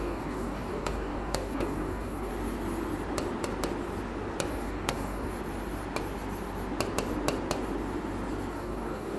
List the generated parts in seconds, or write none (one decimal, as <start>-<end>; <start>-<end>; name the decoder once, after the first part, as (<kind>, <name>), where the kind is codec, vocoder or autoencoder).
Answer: 0.0-2.3 (codec, DAC); 4.5-5.3; 8.5-9.2

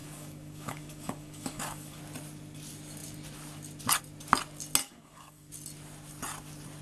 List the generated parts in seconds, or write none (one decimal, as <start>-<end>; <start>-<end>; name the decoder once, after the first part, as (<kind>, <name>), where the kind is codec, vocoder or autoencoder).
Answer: 0.0-2.0 (codec, DAC); 4.8-5.5

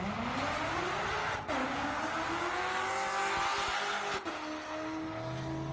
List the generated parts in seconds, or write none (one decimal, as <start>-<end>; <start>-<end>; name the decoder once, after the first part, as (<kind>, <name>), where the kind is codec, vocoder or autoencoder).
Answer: 1.6-2.5 (codec, DAC)

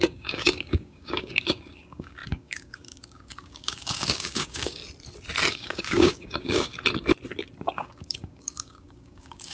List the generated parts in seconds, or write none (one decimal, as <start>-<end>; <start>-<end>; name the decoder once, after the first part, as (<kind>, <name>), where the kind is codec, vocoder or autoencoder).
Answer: 0.0-4.8 (codec, DAC); 5.5-6.7; 7.6-9.5

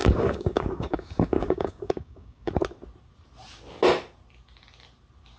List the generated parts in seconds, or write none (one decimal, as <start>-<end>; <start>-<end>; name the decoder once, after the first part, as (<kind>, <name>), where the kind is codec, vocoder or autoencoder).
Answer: 0.0-2.5 (codec, DAC)

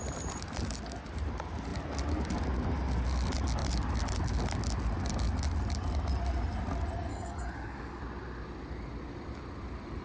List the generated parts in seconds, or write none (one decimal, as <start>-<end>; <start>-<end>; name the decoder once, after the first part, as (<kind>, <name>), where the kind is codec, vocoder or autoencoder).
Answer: 7.1-8.0 (codec, DAC)